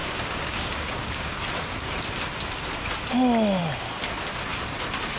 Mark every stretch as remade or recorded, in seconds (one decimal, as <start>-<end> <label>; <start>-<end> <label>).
0.0-1.4 remade; 1.4-5.2 recorded